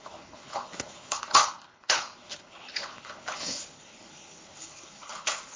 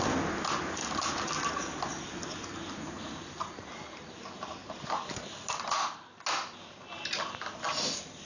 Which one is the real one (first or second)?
second